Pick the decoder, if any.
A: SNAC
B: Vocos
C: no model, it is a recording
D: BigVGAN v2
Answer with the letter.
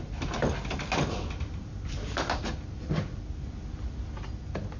C